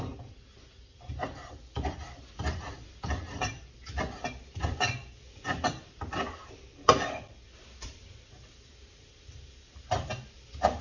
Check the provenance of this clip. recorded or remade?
recorded